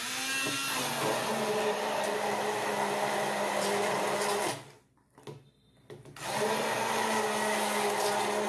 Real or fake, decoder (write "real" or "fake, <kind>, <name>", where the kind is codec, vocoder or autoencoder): real